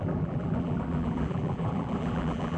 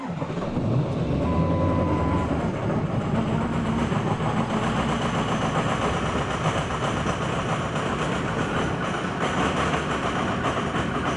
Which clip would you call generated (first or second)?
first